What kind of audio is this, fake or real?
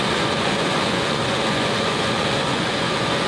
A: fake